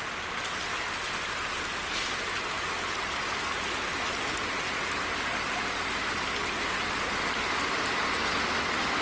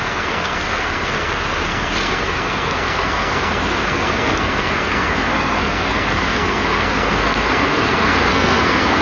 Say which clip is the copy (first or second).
second